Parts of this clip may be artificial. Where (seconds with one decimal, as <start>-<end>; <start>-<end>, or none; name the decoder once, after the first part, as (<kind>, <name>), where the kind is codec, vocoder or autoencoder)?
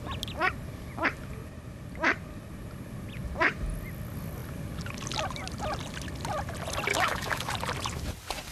6.9-7.5 (autoencoder, DAC-VAE)